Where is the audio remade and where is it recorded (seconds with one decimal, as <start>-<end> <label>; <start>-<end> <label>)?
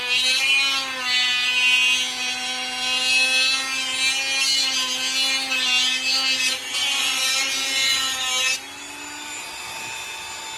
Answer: 0.0-6.8 recorded; 6.8-8.2 remade; 8.2-10.6 recorded